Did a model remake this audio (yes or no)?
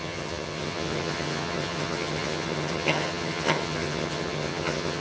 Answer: yes